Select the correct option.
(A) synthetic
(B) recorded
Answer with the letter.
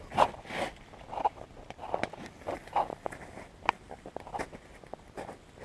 B